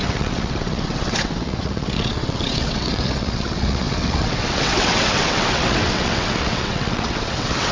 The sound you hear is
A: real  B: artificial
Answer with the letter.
B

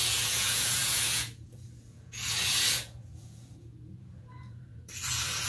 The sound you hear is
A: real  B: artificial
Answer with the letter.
B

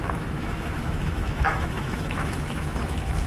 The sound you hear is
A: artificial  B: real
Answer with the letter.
A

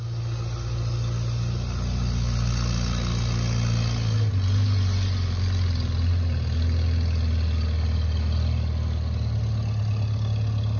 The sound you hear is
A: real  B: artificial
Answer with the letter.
A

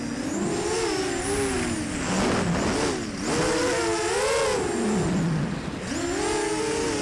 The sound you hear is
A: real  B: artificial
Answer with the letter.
A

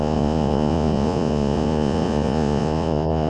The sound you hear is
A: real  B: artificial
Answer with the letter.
B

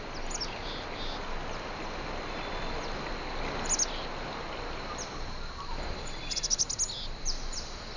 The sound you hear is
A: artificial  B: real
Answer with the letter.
B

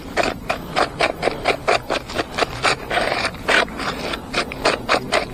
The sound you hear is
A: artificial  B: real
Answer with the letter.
A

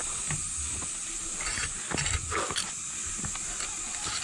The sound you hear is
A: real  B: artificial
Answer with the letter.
A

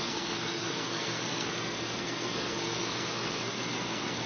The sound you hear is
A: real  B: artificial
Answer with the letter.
B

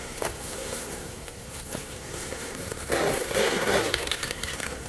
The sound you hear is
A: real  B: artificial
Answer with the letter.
B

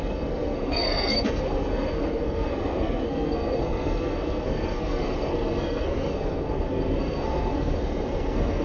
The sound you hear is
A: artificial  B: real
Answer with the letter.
A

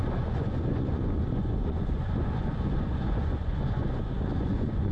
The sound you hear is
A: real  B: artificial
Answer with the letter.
B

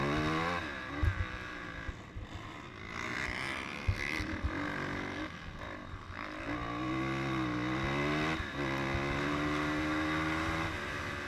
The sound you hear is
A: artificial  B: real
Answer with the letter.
B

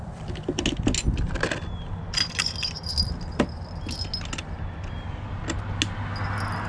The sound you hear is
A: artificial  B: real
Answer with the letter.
B